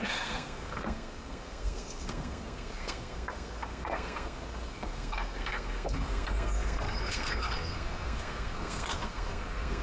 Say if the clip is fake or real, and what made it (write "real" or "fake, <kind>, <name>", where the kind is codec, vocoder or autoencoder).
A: fake, codec, SNAC